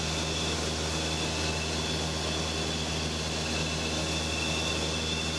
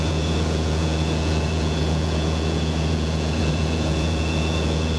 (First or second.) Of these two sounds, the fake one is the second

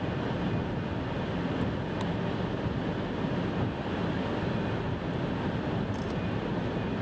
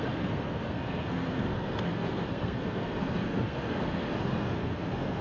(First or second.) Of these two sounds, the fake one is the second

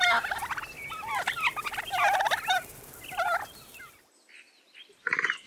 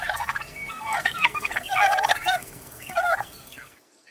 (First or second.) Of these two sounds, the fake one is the second